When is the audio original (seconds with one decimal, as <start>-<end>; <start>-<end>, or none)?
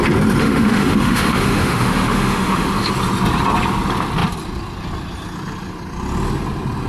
0.0-0.4; 2.9-6.9